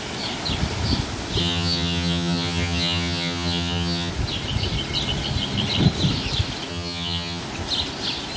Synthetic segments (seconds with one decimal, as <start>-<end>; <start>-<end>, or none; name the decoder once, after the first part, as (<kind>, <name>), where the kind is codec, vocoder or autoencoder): 1.4-4.1 (vocoder, HiFi-GAN); 6.7-7.4